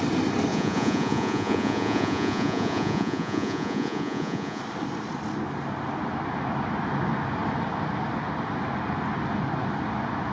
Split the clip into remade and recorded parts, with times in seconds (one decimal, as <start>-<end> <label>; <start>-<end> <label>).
0.0-0.5 recorded; 0.5-4.6 remade; 4.6-10.3 recorded